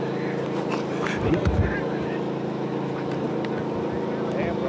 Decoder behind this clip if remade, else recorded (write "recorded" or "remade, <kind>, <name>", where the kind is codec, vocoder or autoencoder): recorded